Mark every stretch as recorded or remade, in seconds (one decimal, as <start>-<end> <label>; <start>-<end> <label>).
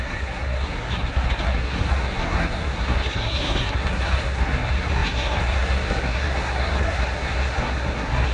0.0-8.3 remade